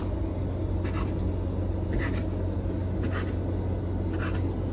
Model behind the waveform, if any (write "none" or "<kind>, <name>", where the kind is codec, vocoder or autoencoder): none